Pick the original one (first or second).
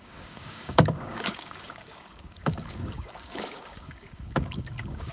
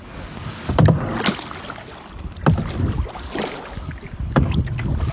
second